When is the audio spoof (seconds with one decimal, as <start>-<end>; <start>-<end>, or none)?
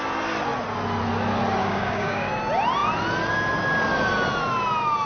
1.6-2.3